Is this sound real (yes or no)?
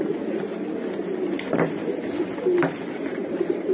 yes